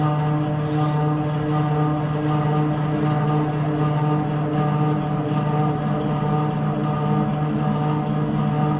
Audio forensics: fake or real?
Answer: real